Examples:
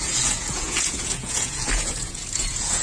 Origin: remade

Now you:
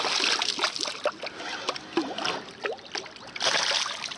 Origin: recorded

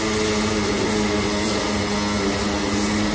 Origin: recorded